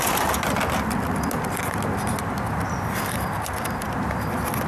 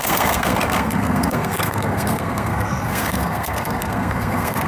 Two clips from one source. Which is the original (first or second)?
first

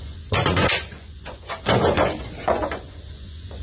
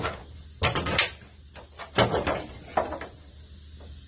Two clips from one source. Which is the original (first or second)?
second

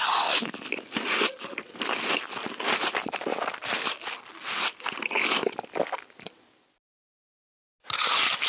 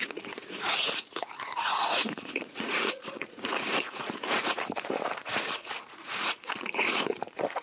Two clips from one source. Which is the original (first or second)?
first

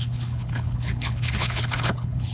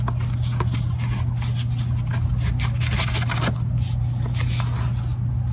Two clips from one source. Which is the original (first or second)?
second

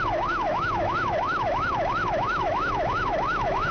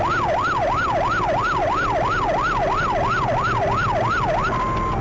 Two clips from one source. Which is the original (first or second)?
second